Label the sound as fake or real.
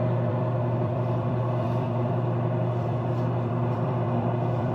fake